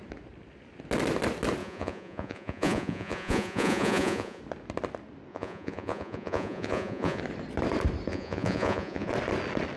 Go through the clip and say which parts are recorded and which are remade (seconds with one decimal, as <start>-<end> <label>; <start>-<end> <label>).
0.0-1.6 recorded; 1.6-4.4 remade; 4.4-5.3 recorded; 5.3-7.2 remade; 7.2-8.1 recorded; 8.1-9.1 remade; 9.1-9.8 recorded